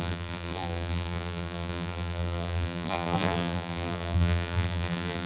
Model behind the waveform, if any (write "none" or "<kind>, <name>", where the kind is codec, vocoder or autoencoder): vocoder, BigVGAN v2